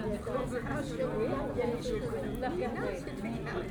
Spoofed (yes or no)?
no